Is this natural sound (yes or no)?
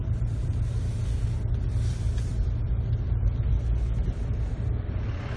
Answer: yes